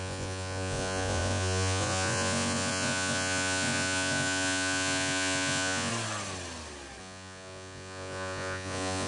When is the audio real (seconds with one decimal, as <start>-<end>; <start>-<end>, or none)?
5.9-7.0